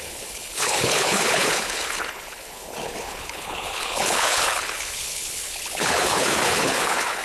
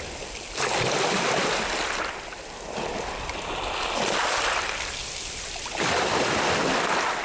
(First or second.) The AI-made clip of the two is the first